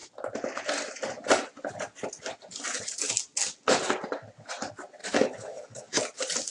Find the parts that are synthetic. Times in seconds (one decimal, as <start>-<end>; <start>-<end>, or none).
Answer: 5.0-6.0